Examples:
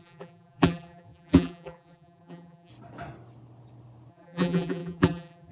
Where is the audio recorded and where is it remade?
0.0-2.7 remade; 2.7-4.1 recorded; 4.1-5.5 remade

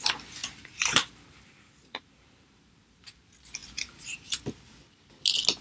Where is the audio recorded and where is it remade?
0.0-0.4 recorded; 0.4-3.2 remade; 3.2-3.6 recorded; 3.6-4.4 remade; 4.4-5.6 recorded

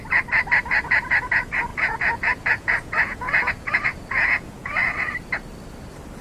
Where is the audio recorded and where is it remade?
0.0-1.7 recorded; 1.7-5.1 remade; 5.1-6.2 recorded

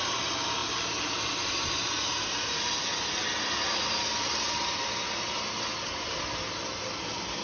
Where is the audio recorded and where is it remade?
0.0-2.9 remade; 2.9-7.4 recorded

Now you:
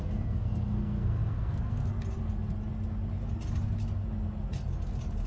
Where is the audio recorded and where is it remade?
0.0-1.8 remade; 1.8-5.3 recorded